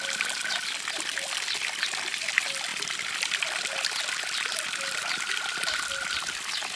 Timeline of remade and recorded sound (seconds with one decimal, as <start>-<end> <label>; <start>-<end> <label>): 0.0-6.8 recorded